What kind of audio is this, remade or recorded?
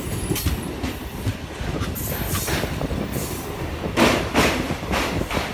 remade